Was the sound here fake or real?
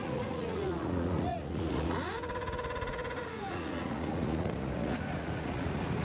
fake